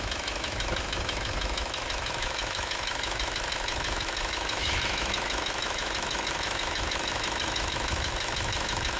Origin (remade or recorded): remade